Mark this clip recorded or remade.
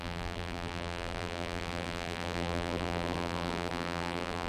remade